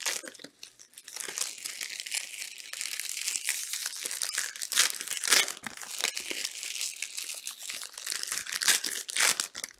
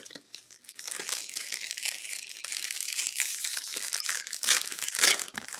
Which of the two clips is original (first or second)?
first